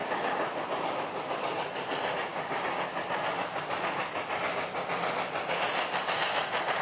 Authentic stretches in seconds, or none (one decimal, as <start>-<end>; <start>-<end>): 0.0-6.8